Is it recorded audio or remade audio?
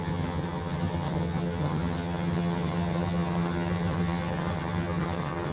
remade